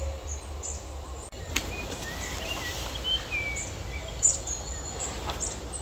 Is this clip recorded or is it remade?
recorded